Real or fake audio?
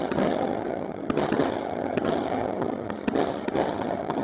fake